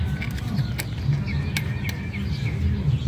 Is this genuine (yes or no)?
yes